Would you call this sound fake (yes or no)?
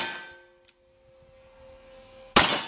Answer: no